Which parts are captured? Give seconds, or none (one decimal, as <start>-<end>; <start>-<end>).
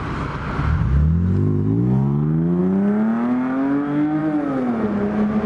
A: 0.0-5.5